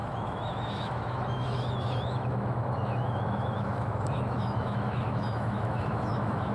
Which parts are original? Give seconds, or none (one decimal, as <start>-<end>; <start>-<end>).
none